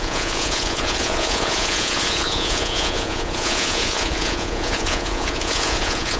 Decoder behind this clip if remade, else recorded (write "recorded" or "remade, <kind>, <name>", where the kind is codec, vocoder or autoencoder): remade, vocoder, Vocos